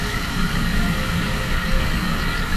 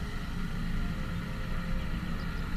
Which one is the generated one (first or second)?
first